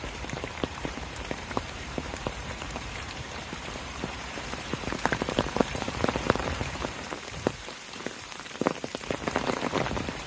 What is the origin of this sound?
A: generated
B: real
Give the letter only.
A